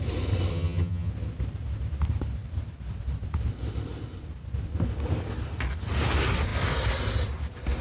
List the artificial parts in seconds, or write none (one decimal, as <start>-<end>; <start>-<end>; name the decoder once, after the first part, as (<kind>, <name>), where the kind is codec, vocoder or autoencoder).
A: 0.5-1.1 (vocoder, HiFi-GAN)